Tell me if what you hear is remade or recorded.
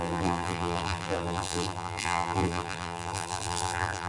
remade